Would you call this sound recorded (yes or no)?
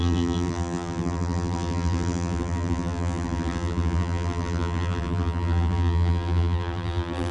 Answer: no